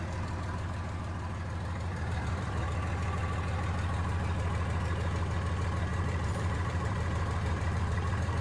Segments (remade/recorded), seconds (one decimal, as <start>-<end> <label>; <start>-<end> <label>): 0.0-1.9 recorded; 1.9-2.7 remade; 2.7-5.9 recorded; 5.9-8.4 remade